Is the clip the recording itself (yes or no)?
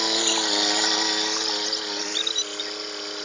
yes